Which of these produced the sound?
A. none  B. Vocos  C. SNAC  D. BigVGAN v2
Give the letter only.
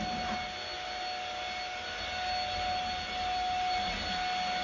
A